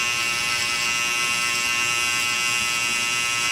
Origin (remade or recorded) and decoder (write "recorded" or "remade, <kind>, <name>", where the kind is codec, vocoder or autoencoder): recorded